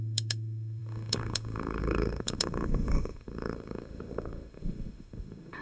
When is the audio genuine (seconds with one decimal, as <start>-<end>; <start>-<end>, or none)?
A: none